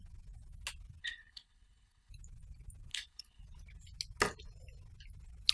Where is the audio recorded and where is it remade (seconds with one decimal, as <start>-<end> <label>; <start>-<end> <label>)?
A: 0.0-1.0 recorded; 1.0-2.1 remade; 2.1-2.9 recorded; 2.9-3.4 remade; 3.4-5.5 recorded